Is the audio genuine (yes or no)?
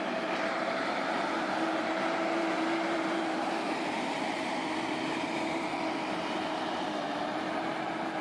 no